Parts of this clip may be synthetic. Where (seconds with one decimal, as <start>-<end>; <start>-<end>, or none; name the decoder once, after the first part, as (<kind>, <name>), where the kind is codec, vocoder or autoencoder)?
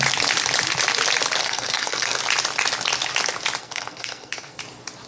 1.4-2.2 (codec, SNAC); 3.6-4.6